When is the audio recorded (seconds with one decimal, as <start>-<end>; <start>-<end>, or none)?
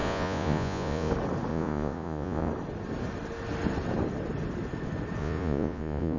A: 1.1-1.5; 2.5-5.2